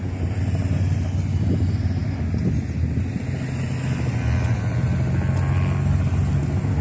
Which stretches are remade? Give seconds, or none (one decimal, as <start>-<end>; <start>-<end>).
none